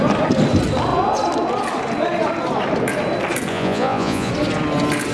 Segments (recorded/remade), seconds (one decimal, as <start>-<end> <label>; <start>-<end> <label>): 0.0-3.5 recorded; 3.5-4.3 remade; 4.3-5.1 recorded